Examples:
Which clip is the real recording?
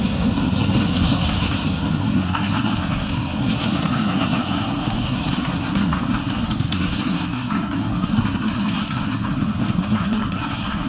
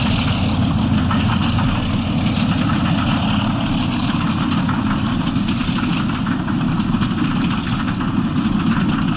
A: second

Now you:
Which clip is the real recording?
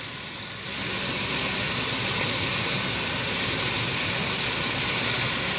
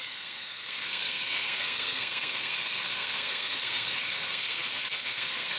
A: first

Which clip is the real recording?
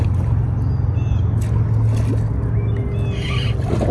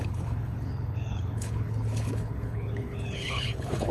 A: first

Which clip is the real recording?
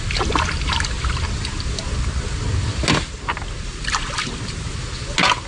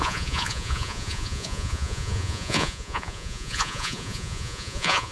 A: first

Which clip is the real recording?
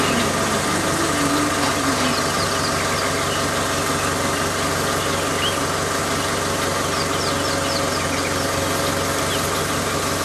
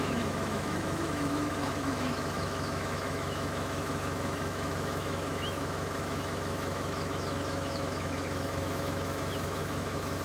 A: first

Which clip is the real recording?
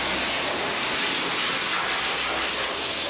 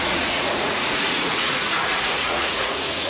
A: first